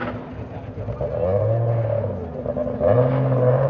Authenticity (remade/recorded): recorded